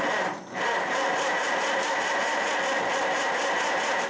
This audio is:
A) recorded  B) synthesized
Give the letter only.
A